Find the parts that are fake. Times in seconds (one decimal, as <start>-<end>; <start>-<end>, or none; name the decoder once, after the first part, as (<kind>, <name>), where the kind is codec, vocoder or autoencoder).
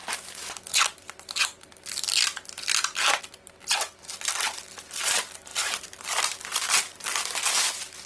none